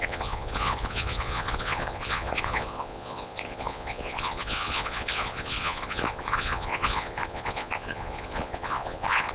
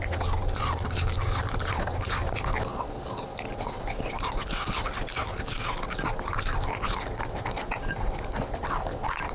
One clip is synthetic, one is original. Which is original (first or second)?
second